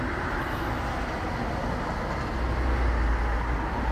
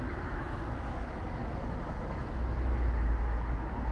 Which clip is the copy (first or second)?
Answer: second